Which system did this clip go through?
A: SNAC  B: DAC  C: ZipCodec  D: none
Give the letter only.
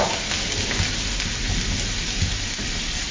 D